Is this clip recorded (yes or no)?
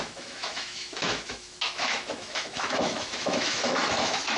no